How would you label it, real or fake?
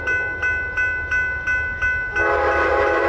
real